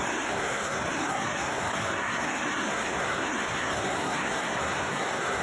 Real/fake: fake